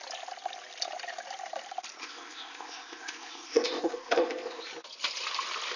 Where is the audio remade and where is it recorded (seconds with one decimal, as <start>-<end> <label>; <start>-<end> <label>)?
0.0-2.0 recorded; 2.0-4.6 remade; 4.6-5.8 recorded